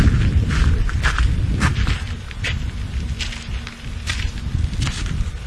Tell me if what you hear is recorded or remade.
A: remade